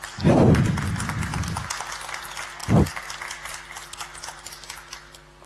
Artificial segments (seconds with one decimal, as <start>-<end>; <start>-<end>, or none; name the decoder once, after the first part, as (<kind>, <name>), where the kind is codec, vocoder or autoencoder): none